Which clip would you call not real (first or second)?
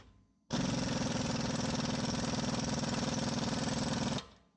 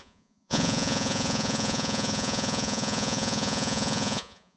second